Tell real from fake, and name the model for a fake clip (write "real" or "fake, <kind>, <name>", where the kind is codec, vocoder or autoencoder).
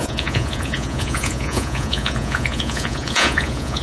fake, vocoder, Vocos